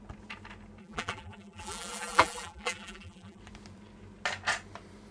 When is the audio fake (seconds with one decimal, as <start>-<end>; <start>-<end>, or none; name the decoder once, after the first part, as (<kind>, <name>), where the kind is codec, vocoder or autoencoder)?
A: 0.8-3.4 (vocoder, BigVGAN v2)